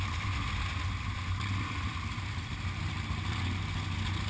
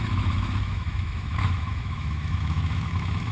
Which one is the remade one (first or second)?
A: second